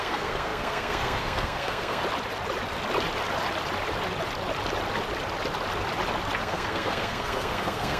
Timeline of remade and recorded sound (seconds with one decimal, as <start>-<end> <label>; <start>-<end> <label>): 0.0-2.0 remade; 2.0-6.4 recorded; 6.4-8.0 remade